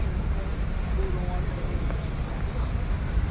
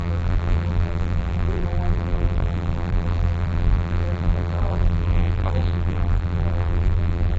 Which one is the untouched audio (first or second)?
first